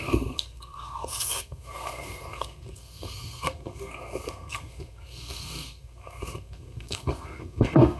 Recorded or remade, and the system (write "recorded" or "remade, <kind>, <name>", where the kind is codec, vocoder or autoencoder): remade, codec, SNAC